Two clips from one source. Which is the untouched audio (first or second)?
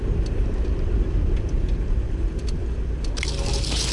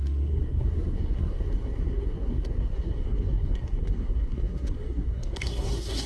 first